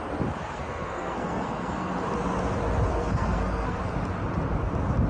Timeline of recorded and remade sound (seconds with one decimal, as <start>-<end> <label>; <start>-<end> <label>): 0.0-0.4 recorded; 0.4-1.9 remade; 1.9-2.9 recorded; 2.9-3.8 remade; 3.8-5.1 recorded